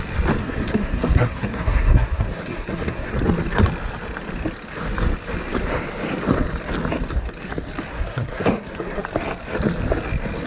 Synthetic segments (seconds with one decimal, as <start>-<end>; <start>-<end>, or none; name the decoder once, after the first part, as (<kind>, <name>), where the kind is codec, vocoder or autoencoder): 0.4-3.1 (codec, SNAC); 7.9-9.0